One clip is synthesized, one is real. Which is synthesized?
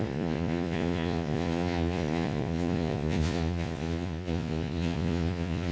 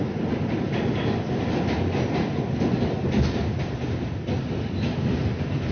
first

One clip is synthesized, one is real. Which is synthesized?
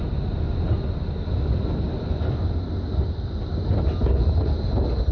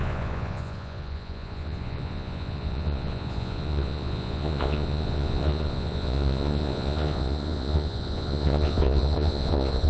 second